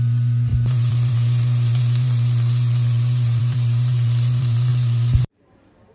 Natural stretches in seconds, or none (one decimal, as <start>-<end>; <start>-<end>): none